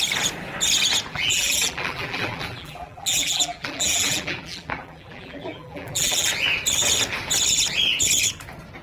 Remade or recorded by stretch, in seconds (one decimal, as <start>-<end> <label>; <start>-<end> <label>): 0.0-1.1 recorded; 1.1-6.3 remade; 6.3-8.8 recorded